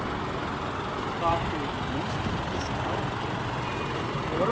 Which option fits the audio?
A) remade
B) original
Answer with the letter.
B